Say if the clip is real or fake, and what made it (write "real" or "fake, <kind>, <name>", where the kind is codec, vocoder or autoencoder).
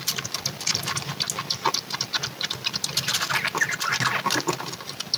real